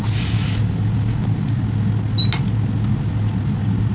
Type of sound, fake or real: real